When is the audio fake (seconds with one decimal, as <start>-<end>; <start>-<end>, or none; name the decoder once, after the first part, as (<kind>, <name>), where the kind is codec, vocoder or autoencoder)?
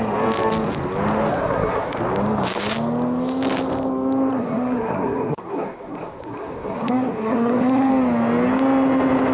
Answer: 1.3-2.0 (codec, SNAC); 4.3-7.9